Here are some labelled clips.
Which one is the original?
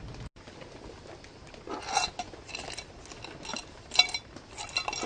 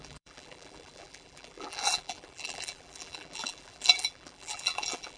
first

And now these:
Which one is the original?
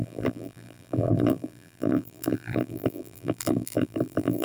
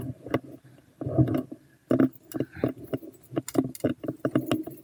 second